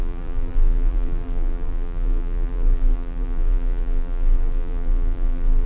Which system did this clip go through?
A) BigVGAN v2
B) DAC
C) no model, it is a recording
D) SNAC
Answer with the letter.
A